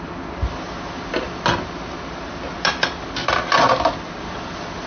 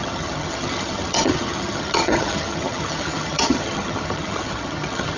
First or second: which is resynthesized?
second